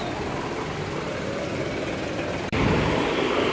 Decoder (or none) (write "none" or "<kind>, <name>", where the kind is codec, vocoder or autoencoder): none